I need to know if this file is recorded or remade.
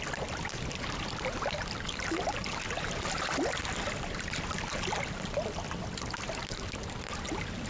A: recorded